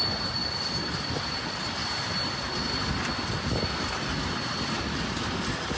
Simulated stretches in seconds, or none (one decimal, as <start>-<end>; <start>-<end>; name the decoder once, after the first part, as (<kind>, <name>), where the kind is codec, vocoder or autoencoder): none